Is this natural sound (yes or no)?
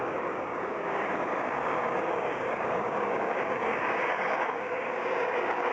no